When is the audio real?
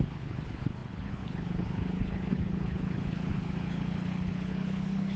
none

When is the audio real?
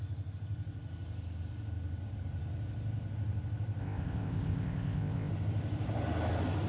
0.0-3.8; 5.3-6.7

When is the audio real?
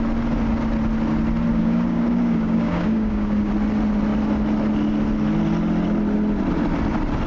0.0-1.5; 3.5-7.3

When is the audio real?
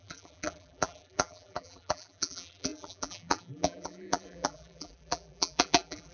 none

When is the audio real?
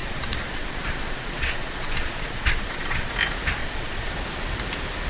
3.1-3.6; 4.1-5.1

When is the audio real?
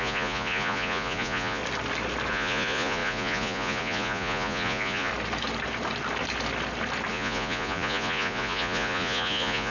1.6-2.3; 5.1-7.1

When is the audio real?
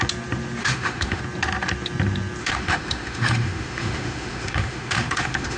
0.0-0.6; 1.2-2.4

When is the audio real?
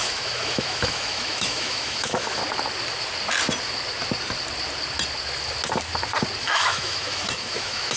2.4-6.4